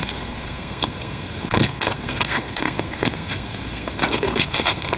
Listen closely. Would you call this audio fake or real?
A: fake